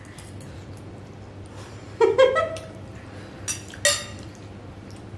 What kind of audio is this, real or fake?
real